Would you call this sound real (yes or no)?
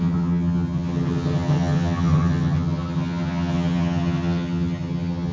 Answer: no